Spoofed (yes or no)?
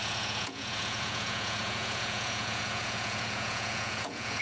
yes